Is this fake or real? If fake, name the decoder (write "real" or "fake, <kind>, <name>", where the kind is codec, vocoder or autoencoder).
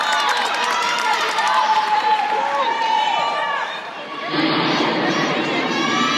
fake, vocoder, BigVGAN v2